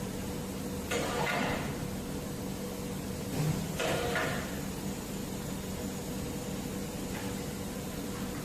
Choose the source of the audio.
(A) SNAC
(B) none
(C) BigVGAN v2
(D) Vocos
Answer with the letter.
B